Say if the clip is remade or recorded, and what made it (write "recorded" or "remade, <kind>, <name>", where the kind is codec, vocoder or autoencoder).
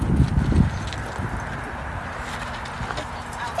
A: recorded